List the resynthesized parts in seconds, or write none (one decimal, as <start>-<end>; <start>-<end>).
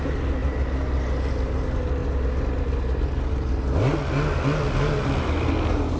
none